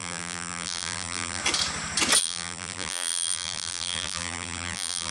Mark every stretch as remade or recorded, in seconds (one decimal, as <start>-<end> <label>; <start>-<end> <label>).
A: 0.0-1.4 remade; 1.4-2.2 recorded; 2.2-5.1 remade